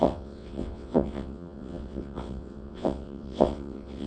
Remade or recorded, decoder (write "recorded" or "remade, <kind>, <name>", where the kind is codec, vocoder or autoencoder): remade, vocoder, WaveNeXt